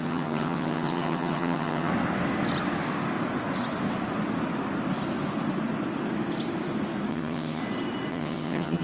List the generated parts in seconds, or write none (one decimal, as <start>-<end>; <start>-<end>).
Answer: 0.0-1.9; 7.1-7.6; 8.1-8.8